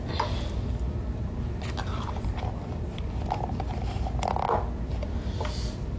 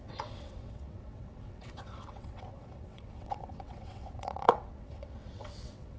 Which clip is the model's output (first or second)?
second